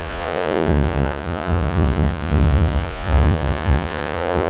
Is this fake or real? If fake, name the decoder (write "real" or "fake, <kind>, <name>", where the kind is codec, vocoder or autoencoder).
fake, vocoder, Vocos